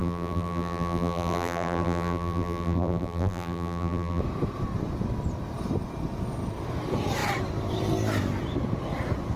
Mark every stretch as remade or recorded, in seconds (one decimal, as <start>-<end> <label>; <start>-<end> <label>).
0.0-4.2 remade; 4.2-9.4 recorded